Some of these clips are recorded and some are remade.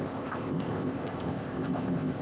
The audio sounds remade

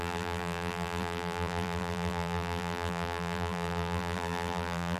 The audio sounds remade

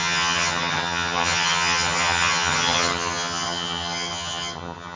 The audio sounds remade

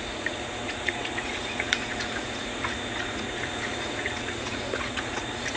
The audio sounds remade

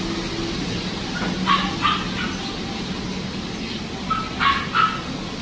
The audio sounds recorded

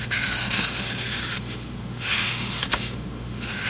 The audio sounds remade